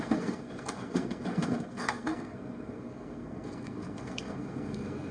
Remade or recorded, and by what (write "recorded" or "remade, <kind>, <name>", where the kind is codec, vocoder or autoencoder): remade, codec, SNAC